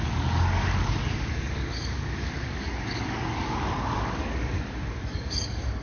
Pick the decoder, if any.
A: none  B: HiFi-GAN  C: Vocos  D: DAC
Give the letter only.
D